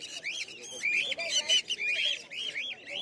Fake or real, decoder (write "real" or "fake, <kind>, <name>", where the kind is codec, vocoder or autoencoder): real